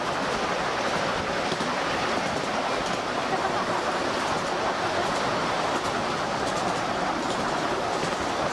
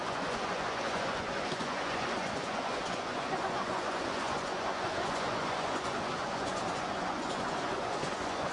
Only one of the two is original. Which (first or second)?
first